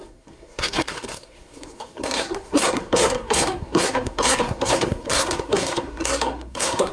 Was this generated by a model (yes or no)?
yes